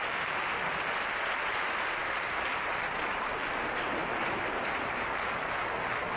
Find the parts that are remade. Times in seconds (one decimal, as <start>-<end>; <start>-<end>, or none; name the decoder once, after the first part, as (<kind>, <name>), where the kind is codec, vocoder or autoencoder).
none